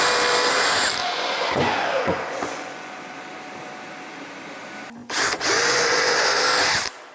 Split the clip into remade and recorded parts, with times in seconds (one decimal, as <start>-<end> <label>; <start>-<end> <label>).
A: 0.0-1.0 recorded; 1.0-3.2 remade; 3.2-5.0 recorded; 5.0-6.4 remade; 6.4-7.1 recorded